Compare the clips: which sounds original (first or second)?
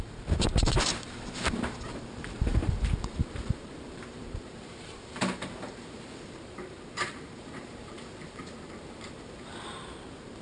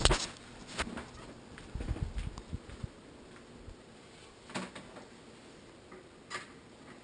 second